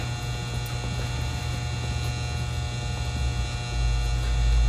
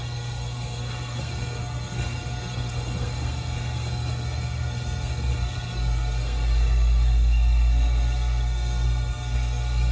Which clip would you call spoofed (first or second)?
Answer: second